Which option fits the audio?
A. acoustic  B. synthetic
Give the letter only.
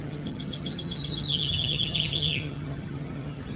B